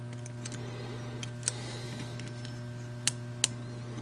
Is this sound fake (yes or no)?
no